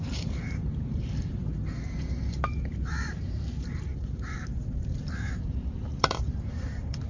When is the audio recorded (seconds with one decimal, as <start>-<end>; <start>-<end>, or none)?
none